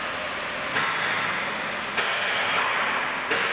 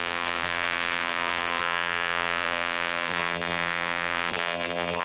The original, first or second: first